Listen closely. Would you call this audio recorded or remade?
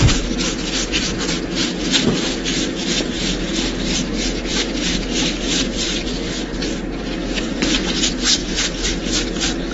recorded